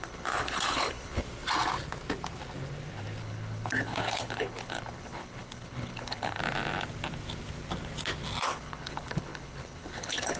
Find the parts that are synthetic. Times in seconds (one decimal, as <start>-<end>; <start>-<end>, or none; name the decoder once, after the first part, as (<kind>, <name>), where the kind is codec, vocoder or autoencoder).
0.0-1.2 (codec, HILCodec); 3.2-6.4; 8.4-10.4